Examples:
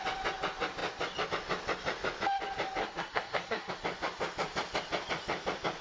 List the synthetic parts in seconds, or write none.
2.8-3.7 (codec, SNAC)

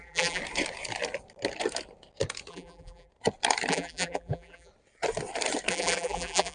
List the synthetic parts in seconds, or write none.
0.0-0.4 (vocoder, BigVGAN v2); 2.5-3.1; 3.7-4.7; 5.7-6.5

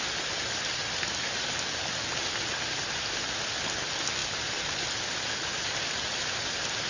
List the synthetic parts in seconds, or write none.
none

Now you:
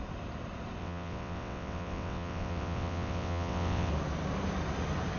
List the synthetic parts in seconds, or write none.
0.8-3.9 (vocoder, WaveNeXt)

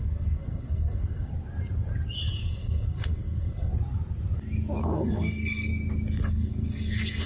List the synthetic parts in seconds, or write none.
0.0-1.3 (codec, SNAC); 2.3-3.7; 4.8-5.7; 6.3-7.3